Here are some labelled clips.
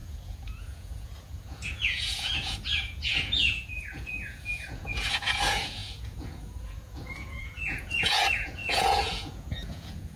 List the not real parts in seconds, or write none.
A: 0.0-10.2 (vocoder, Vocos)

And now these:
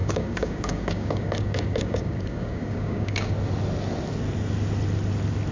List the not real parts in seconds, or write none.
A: 0.0-3.3 (codec, DAC)

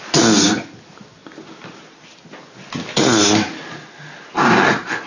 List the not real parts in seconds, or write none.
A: none

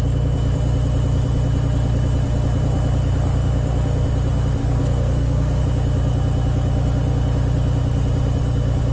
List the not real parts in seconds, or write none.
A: 4.6-5.6 (codec, SNAC)

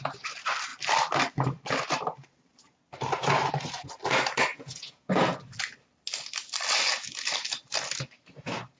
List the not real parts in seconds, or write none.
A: 4.5-5.2 (vocoder, Vocos)

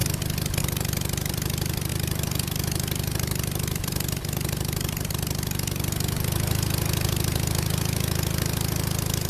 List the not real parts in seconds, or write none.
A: 0.6-9.3 (vocoder, BigVGAN v2)